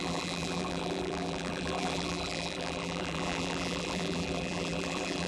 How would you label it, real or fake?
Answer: fake